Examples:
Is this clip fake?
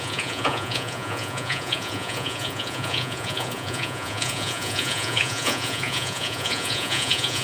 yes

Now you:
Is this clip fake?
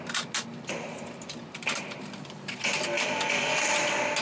no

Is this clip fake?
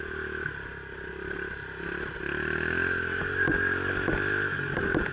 no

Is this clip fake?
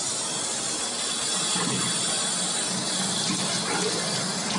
yes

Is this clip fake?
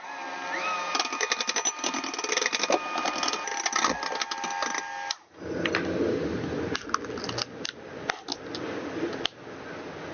no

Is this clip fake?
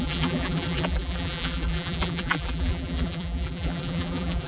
yes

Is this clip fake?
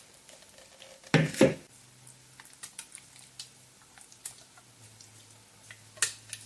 no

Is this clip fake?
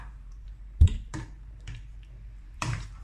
yes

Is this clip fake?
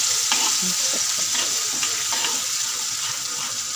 no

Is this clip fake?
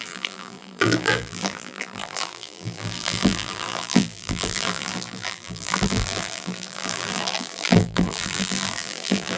yes